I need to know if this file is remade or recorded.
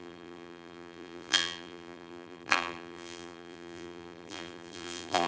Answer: remade